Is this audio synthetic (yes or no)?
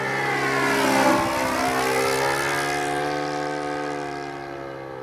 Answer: no